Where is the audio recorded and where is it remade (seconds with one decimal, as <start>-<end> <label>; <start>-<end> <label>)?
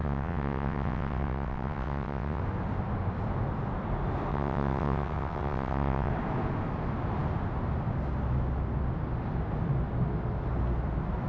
0.0-2.4 remade; 2.4-4.3 recorded; 4.3-6.1 remade; 6.1-11.3 recorded